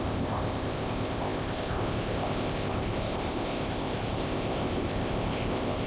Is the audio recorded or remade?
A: remade